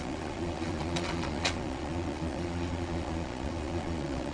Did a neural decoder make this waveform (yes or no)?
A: yes